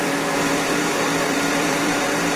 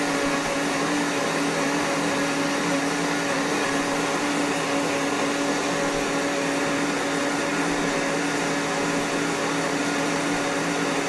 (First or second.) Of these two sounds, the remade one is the first